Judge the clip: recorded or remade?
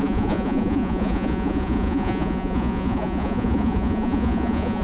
remade